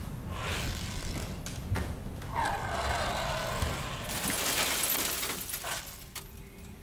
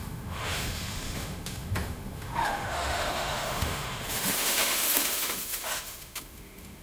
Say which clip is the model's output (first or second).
second